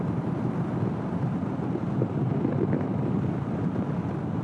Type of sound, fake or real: real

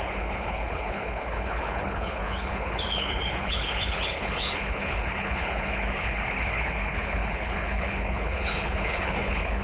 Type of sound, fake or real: fake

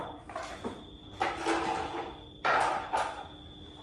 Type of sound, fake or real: real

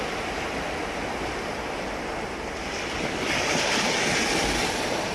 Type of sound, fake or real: real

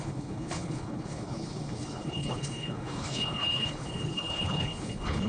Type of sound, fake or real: fake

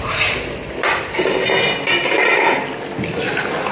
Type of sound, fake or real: real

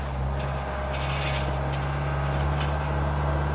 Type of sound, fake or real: real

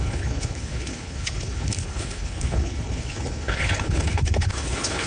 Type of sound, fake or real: fake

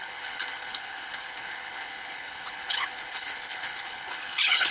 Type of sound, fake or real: fake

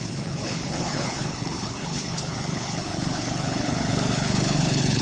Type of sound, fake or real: fake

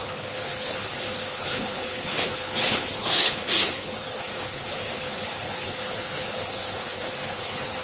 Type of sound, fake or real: fake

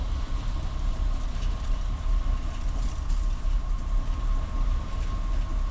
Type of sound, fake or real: real